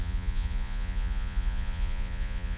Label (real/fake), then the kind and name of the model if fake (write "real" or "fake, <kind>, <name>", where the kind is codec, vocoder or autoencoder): fake, vocoder, Vocos